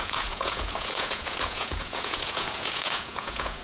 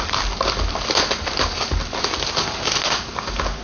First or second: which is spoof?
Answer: first